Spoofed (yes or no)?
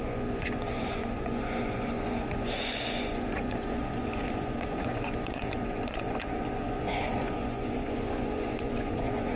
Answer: yes